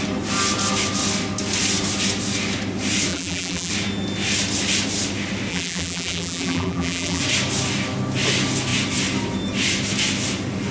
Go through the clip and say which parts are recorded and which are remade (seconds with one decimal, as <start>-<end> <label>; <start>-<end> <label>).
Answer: 0.0-3.1 recorded; 3.1-3.7 remade; 3.7-5.5 recorded; 5.5-7.2 remade; 7.2-10.7 recorded